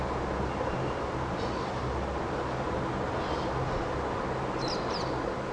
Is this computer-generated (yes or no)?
no